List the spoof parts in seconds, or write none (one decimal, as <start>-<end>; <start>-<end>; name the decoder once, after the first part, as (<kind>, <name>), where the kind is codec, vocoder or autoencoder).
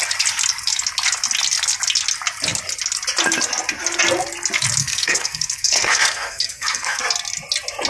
4.8-7.0 (codec, SNAC)